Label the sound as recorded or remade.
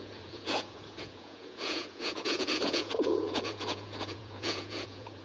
remade